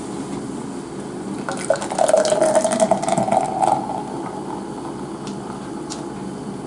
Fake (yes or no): no